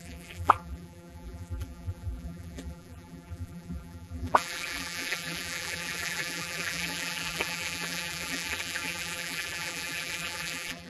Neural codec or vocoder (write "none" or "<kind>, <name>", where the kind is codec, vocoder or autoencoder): vocoder, BigVGAN v2